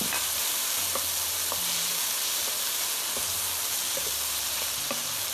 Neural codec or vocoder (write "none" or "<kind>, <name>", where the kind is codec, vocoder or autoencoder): vocoder, BigVGAN v2